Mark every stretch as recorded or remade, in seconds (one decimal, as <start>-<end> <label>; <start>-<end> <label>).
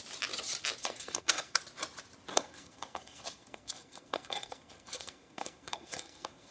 0.0-0.8 recorded; 0.8-1.6 remade; 1.6-2.3 recorded; 2.3-6.5 remade